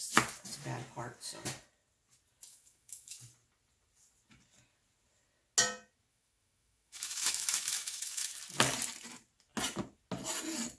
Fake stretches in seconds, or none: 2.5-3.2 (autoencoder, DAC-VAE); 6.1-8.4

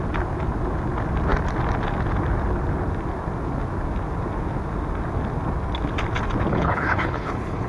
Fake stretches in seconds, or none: 6.5-7.7 (codec, HILCodec)

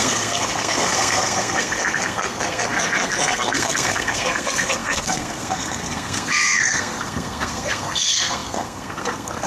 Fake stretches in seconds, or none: 0.0-9.5 (codec, SNAC)

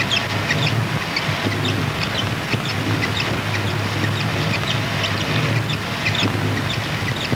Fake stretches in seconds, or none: none

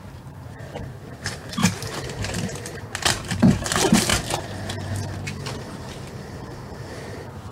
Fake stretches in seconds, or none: 0.0-1.6 (vocoder, BigVGAN v2); 3.3-4.1; 5.7-7.5